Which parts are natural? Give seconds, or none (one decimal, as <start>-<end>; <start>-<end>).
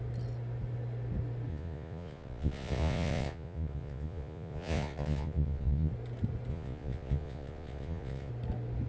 0.0-1.5; 5.9-6.5; 8.3-8.9